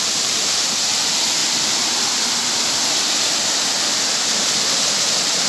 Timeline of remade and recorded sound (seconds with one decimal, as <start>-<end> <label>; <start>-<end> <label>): 0.0-1.4 remade; 1.4-4.7 recorded; 4.7-5.5 remade